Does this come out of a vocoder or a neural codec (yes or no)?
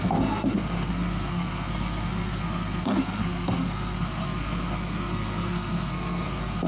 yes